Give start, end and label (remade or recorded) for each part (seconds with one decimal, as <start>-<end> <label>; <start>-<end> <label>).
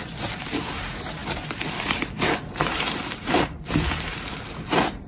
0.0-5.1 remade